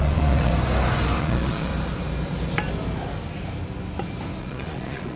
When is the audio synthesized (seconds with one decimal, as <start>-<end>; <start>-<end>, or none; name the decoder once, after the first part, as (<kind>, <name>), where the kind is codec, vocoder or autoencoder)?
0.0-0.5 (vocoder, Vocos); 1.2-1.7; 4.4-5.2